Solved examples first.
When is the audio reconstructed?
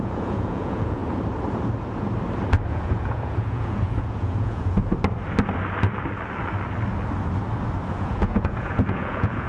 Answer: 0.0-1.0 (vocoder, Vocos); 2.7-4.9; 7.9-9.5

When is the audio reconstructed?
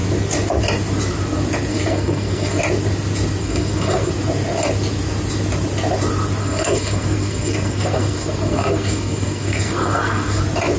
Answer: 1.7-2.6 (codec, SNAC); 3.4-4.1; 6.4-10.4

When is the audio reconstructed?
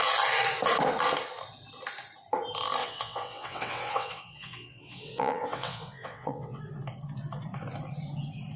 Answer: 2.8-6.6 (vocoder, WaveNeXt)